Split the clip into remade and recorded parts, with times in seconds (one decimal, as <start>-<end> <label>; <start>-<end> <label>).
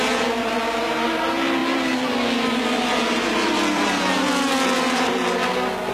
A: 0.0-5.9 recorded